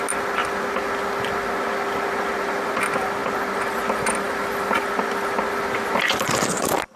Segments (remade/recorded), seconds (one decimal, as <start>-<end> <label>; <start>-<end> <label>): 0.0-7.0 recorded